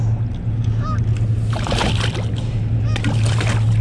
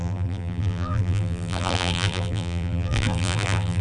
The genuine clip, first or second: first